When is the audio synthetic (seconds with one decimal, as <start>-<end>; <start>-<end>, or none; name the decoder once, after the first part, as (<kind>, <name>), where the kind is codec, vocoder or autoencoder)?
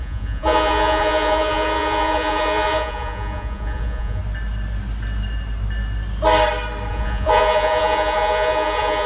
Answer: 0.0-4.2 (vocoder, Vocos); 6.9-9.1